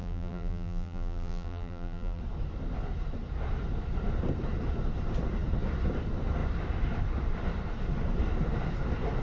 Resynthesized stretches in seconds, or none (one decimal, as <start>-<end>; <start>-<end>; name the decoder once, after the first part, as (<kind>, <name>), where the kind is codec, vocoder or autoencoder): 0.0-2.2 (vocoder, BigVGAN v2)